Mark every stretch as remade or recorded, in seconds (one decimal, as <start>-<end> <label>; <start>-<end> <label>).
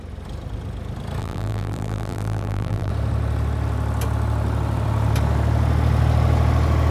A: 0.0-1.2 recorded; 1.2-2.9 remade; 2.9-6.9 recorded